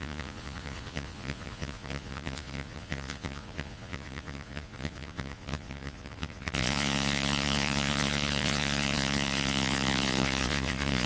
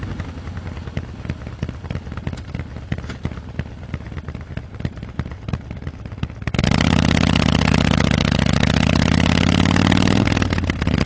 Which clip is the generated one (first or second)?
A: first